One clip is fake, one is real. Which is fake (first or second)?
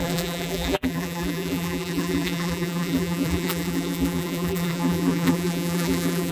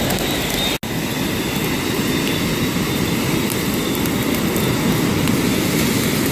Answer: first